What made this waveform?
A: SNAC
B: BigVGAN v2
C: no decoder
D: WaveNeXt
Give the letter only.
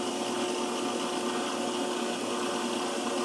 C